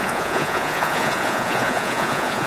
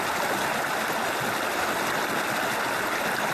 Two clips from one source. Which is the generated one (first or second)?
first